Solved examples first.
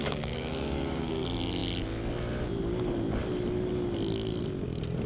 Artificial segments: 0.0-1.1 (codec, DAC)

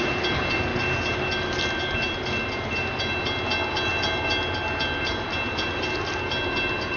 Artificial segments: none

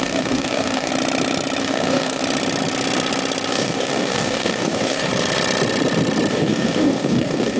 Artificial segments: 0.0-0.9 (codec, DAC); 1.6-2.2; 3.5-5.1; 6.3-7.6

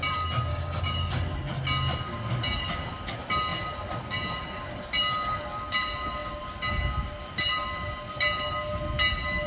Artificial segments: 0.5-1.2 (codec, DAC)

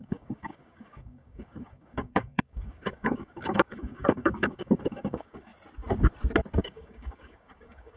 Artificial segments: 0.0-5.5 (codec, DAC); 6.6-8.0

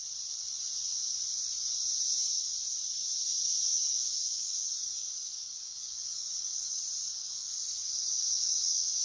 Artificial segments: 3.7-6.8 (codec, DAC); 7.2-9.0